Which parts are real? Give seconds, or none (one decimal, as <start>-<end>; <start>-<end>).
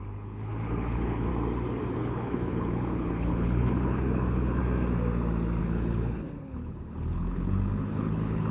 1.3-1.9; 4.6-5.6